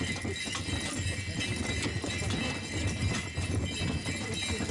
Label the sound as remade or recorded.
recorded